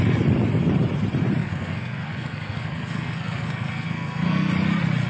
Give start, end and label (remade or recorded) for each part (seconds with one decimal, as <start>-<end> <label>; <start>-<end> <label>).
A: 0.0-1.4 recorded; 1.4-4.5 remade; 4.5-5.1 recorded